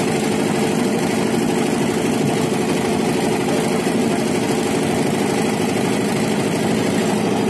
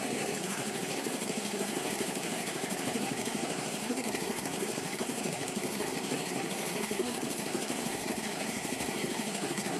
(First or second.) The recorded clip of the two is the first